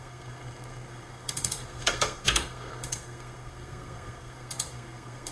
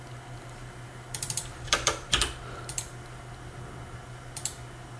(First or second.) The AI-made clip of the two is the first